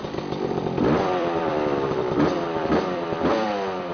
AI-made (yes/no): yes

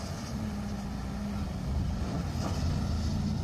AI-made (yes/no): no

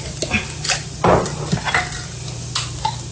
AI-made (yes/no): no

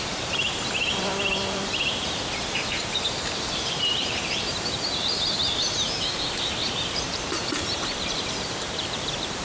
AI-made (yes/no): yes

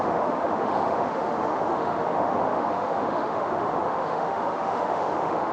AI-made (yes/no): yes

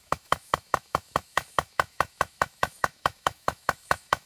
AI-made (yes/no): yes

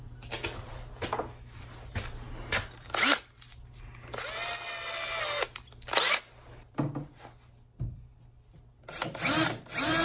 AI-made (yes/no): no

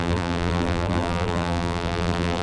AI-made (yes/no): yes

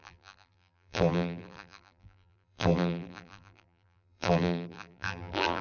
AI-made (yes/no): yes